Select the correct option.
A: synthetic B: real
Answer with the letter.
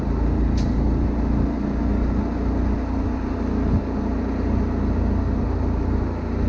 B